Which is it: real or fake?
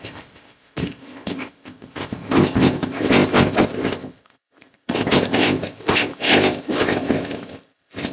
fake